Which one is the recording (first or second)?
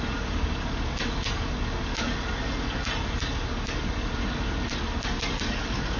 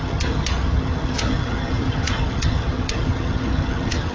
first